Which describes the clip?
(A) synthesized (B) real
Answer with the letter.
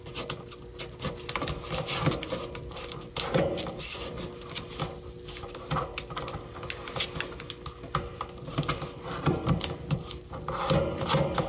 B